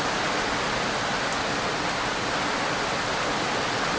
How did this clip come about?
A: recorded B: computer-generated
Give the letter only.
A